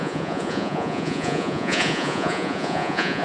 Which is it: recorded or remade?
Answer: remade